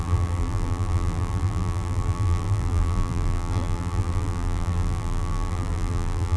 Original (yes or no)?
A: no